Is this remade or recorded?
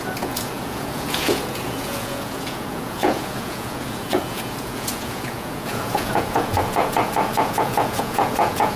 remade